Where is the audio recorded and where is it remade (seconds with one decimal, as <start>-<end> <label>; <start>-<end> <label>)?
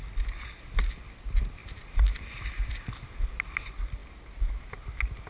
0.0-5.3 recorded